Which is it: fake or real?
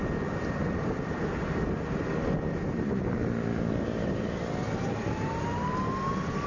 real